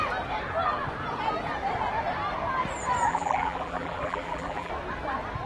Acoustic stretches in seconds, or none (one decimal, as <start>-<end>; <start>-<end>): 0.0-3.1; 4.7-5.5